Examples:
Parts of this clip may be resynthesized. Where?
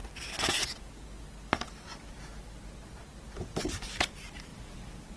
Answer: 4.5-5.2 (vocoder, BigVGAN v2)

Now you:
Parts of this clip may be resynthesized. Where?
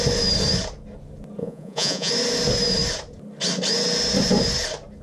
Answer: 1.4-2.1 (vocoder, Vocos)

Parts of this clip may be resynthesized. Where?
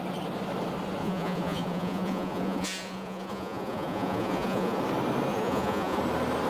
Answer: 1.0-4.8 (vocoder, Vocos); 5.3-6.0